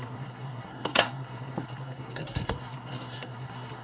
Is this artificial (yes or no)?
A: yes